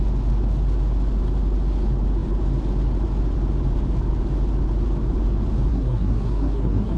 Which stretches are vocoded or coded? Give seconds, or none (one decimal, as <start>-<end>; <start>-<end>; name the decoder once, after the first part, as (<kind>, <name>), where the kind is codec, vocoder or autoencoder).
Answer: 5.7-7.0 (codec, SNAC)